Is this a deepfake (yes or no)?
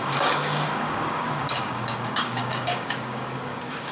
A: yes